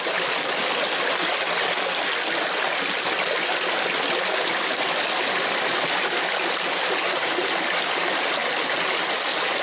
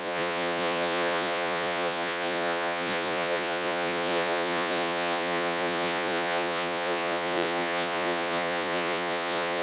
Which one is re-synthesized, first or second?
second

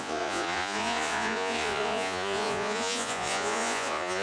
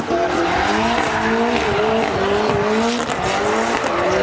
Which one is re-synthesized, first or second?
first